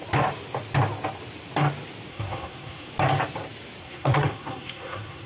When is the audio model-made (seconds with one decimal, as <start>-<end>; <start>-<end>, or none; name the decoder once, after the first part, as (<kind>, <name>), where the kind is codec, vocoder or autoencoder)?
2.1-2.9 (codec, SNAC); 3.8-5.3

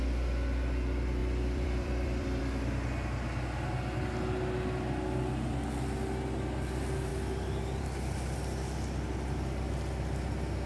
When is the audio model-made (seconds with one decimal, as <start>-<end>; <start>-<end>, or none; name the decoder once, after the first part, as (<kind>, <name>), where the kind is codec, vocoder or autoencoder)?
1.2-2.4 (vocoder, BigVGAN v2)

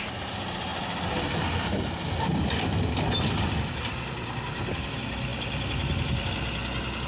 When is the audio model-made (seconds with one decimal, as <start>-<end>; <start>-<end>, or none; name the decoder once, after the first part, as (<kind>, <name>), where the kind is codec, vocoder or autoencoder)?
none